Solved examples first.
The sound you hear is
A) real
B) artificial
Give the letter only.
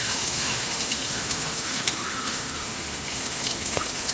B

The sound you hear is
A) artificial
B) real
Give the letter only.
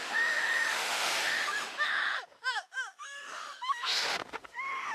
A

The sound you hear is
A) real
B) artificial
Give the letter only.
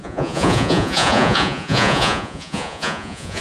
B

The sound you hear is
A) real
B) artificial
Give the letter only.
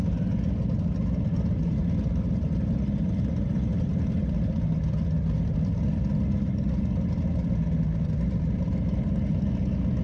A